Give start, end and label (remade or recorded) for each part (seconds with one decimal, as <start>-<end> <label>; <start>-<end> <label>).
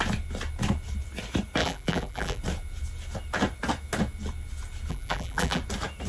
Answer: 0.0-1.6 recorded; 1.6-2.4 remade; 2.4-4.9 recorded; 4.9-5.6 remade; 5.6-6.1 recorded